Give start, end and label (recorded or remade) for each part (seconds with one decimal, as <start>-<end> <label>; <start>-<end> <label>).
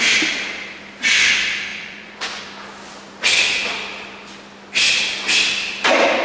0.0-1.7 recorded; 1.7-2.4 remade; 2.4-6.2 recorded